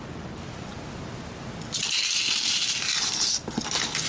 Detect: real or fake real